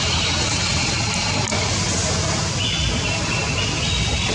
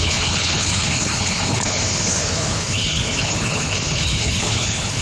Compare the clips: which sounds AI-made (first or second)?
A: second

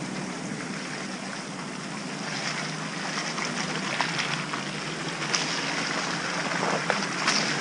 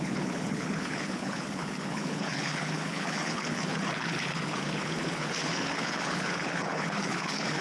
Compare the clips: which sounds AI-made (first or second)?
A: second